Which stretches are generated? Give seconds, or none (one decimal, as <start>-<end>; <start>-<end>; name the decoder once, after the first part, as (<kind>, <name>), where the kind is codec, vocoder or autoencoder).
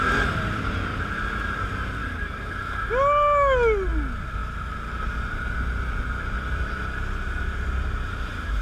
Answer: none